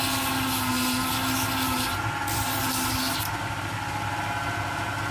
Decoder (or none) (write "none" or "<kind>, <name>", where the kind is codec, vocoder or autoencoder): none